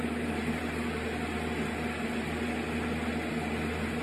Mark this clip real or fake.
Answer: real